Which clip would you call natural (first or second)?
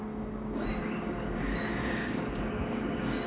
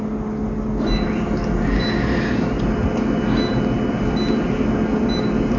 second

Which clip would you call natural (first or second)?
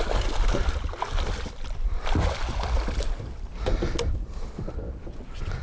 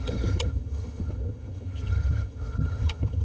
first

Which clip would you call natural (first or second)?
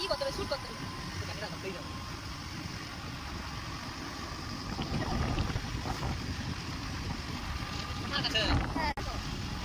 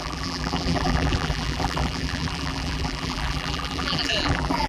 first